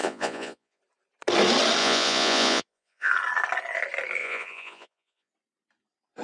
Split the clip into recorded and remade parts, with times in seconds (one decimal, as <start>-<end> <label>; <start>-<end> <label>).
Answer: 0.0-0.8 remade; 0.8-1.8 recorded; 1.8-3.1 remade; 3.1-4.2 recorded; 4.2-5.3 remade; 5.3-6.2 recorded